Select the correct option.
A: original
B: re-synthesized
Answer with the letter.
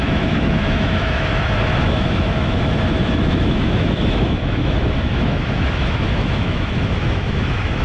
B